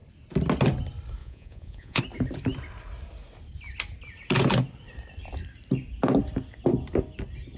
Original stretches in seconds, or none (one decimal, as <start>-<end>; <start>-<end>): 0.0-1.2; 2.0-7.6